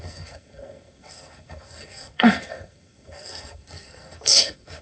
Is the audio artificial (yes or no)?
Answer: yes